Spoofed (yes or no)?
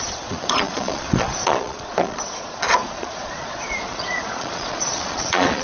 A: yes